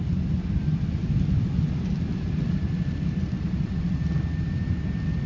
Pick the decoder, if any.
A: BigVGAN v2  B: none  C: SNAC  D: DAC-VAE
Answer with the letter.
B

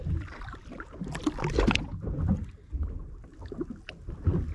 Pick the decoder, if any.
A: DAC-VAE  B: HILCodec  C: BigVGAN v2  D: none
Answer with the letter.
D